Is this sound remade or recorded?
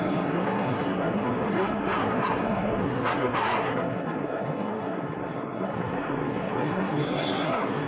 remade